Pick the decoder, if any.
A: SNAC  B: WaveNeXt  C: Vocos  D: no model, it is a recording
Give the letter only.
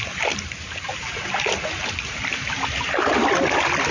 D